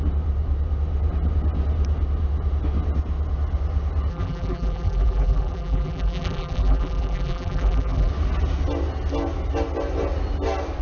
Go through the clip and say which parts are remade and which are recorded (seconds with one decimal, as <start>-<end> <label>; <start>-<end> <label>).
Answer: 0.0-4.1 recorded; 4.1-8.1 remade; 8.1-10.8 recorded